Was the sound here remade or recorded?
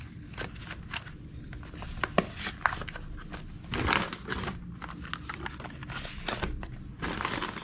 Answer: recorded